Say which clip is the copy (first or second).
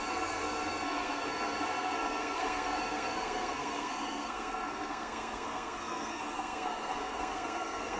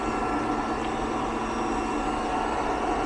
first